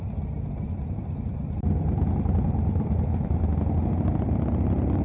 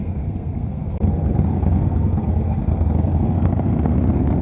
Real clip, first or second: first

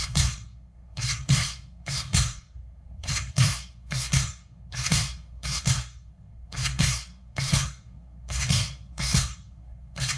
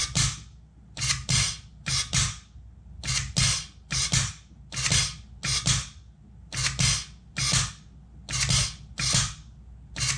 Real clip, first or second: second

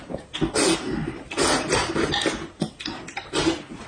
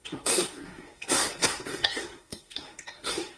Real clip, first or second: first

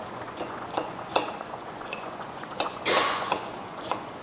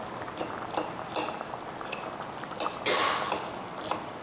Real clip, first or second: second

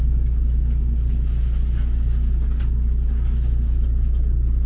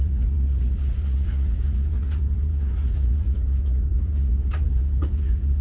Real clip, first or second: first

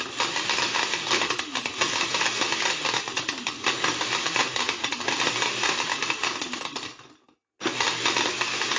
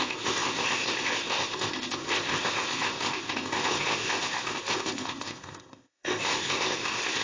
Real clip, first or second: first